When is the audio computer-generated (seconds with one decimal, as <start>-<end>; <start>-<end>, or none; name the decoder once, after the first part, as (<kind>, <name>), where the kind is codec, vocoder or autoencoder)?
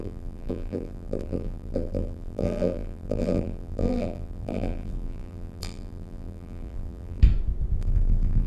0.0-7.2 (vocoder, BigVGAN v2); 7.8-8.5